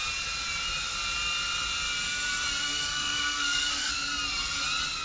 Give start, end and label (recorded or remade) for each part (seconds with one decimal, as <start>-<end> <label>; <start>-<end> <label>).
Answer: 0.0-2.6 recorded; 2.6-3.9 remade; 3.9-5.0 recorded